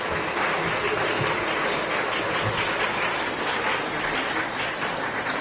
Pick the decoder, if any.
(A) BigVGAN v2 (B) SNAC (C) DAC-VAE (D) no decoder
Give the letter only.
D